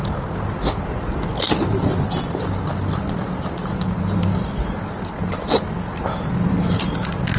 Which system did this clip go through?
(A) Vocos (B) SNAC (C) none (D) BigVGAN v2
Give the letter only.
C